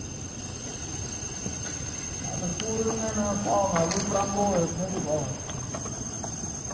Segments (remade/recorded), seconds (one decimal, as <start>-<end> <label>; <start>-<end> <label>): 0.0-6.7 recorded